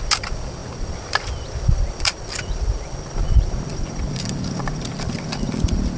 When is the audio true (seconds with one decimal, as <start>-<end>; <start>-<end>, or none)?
0.0-6.0